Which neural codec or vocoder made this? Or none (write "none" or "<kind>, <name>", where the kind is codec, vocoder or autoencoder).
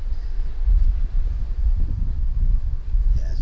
none